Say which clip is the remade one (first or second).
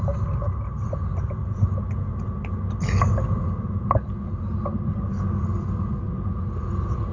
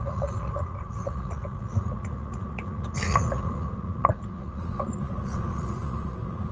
second